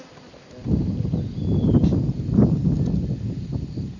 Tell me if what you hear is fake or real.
real